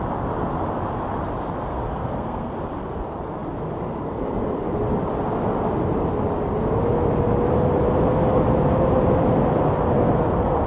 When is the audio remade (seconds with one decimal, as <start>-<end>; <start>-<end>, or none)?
1.7-2.5